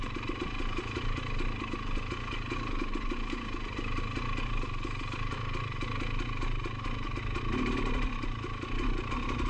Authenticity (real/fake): real